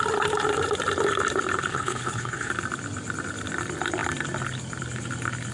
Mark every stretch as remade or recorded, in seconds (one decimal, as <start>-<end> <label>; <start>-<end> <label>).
0.0-1.7 recorded; 1.7-2.5 remade; 2.5-5.5 recorded